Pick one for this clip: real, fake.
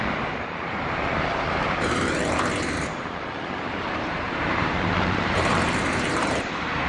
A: fake